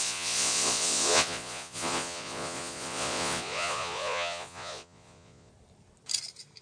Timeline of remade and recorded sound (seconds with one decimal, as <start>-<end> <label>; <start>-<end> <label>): 0.0-5.5 remade; 5.5-6.6 recorded